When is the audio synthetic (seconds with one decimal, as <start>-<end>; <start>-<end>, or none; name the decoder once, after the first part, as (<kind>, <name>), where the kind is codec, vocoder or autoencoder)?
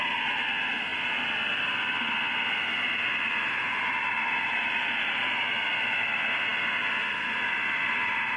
4.4-5.3 (vocoder, BigVGAN v2)